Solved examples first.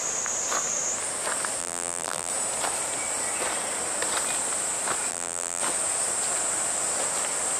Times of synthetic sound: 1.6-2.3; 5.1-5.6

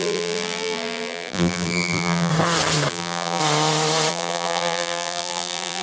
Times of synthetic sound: 0.0-2.3; 2.9-3.4; 4.1-5.8

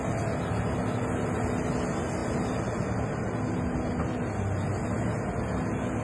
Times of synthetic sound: none

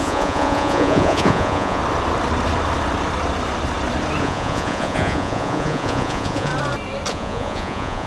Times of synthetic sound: 0.0-1.8; 4.2-6.5; 7.1-8.1

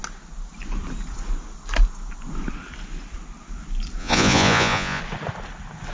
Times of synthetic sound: 4.0-5.0

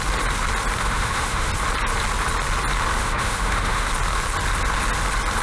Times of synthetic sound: 0.8-1.5; 3.0-3.9